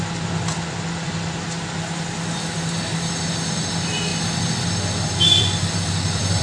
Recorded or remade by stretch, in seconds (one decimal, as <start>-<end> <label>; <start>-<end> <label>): 0.0-6.4 remade